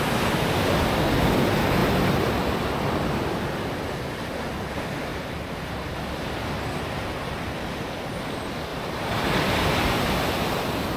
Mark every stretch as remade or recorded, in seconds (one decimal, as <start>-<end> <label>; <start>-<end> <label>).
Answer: 0.0-5.1 recorded; 5.1-6.0 remade; 6.0-8.7 recorded; 8.7-9.3 remade; 9.3-11.0 recorded